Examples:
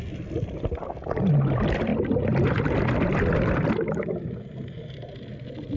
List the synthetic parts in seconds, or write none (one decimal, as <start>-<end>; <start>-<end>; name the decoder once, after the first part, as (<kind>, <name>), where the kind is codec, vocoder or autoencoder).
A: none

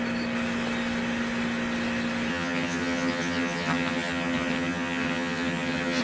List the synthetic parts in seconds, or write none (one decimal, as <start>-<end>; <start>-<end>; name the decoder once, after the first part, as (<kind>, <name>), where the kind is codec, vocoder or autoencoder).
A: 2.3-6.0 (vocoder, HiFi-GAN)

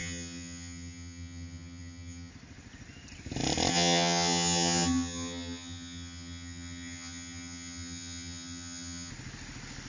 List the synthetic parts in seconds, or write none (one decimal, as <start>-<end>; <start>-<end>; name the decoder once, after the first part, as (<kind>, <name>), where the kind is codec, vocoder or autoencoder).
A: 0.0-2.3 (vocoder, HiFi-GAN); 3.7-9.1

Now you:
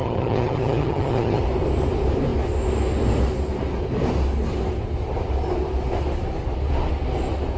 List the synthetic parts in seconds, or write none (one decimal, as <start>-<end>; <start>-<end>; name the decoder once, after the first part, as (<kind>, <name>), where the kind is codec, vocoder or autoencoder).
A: 0.0-1.4 (vocoder, HiFi-GAN)

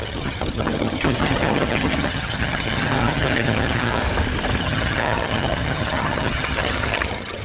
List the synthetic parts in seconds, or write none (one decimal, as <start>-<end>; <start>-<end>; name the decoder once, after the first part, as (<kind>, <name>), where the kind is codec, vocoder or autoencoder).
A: 0.0-4.0 (vocoder, HiFi-GAN); 4.6-7.4